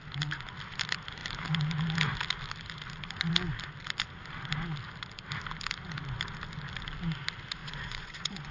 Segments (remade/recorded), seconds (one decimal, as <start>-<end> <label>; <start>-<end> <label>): 0.0-7.6 recorded; 7.6-8.5 remade